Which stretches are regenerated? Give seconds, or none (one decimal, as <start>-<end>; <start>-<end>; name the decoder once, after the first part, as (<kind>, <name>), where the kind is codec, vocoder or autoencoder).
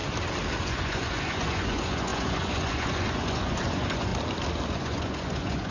0.6-4.1 (vocoder, Vocos); 4.7-5.7